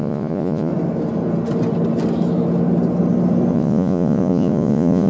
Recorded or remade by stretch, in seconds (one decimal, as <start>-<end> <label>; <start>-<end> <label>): 0.0-0.7 remade; 0.7-3.5 recorded; 3.5-5.1 remade